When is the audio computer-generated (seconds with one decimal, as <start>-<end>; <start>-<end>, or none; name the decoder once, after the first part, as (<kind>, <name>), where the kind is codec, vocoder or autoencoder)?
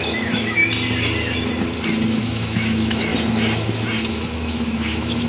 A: 0.0-0.6 (autoencoder, DAC-VAE); 2.2-3.1; 4.1-5.3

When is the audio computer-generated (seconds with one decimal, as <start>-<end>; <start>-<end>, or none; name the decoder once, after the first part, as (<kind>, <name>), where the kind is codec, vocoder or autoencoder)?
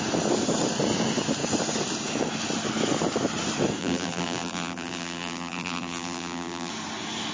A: 3.8-6.7 (vocoder, BigVGAN v2)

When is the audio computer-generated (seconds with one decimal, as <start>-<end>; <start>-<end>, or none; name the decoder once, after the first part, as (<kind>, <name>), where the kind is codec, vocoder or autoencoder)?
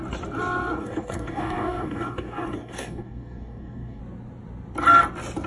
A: 0.8-4.0 (codec, DAC)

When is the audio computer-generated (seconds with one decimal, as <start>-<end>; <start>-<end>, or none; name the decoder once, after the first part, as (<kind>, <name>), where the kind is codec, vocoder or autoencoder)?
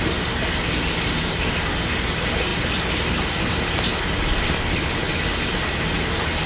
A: none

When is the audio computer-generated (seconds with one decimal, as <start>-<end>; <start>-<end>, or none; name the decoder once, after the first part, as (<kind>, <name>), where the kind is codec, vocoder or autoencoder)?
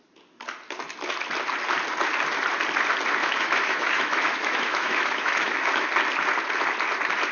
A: 3.2-5.9 (autoencoder, DAC-VAE)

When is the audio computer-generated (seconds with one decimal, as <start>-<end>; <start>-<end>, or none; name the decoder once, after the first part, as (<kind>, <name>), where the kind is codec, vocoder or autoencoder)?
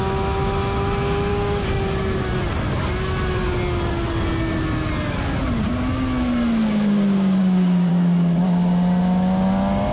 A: 1.3-2.3 (codec, DAC); 7.4-7.9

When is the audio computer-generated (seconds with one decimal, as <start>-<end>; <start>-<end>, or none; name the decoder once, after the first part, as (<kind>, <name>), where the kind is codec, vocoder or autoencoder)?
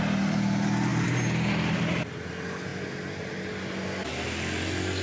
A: none